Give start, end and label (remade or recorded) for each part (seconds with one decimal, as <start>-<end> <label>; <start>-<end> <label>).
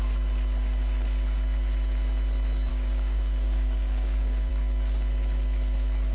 0.0-2.7 recorded; 2.7-4.5 remade; 4.5-6.1 recorded